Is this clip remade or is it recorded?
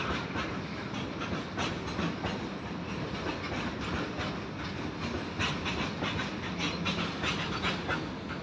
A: recorded